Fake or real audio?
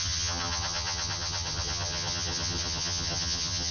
fake